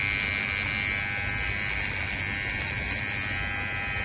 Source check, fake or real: real